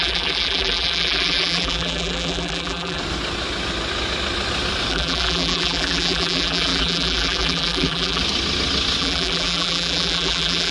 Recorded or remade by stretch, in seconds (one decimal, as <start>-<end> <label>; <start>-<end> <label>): 0.0-3.0 remade; 3.0-4.9 recorded; 4.9-8.2 remade; 8.2-9.0 recorded; 9.0-10.7 remade